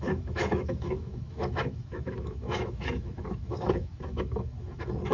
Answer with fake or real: fake